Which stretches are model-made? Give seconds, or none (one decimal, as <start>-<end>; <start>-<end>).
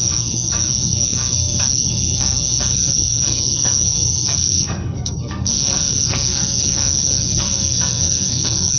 0.0-8.8